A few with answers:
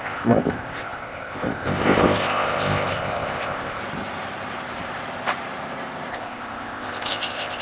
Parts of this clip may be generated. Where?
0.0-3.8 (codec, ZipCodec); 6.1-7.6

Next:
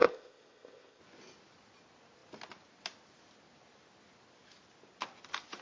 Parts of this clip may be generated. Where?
0.0-1.0 (codec, ZipCodec)

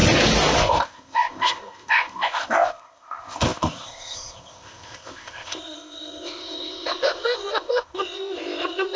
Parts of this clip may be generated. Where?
0.6-9.0 (codec, ZipCodec)

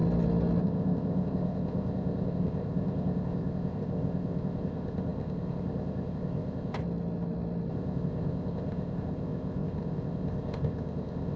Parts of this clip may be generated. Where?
0.6-6.8 (codec, ZipCodec); 7.7-11.4

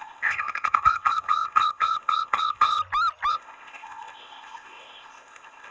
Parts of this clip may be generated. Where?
0.0-2.8 (codec, ZipCodec); 3.3-5.7

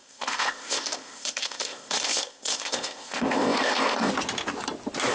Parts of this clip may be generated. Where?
0.0-4.1 (codec, ZipCodec)